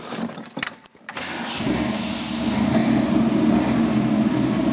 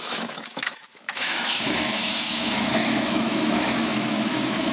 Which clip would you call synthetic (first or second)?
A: second